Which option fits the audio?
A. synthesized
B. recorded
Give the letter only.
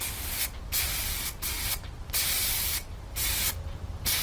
B